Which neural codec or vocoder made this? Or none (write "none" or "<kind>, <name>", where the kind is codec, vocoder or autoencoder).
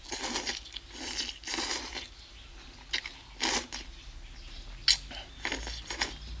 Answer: none